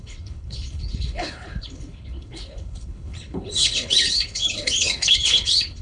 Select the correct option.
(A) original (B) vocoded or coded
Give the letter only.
B